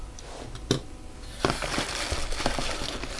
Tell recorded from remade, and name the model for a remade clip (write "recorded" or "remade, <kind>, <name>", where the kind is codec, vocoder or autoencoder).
recorded